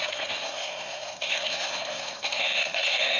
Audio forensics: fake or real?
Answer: fake